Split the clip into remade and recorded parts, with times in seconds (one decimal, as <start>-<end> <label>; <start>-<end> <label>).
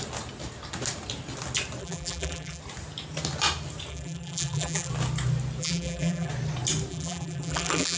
0.0-1.8 recorded; 1.8-2.6 remade; 2.6-3.9 recorded; 3.9-4.9 remade; 4.9-5.6 recorded; 5.6-6.3 remade; 6.3-6.9 recorded; 6.9-8.0 remade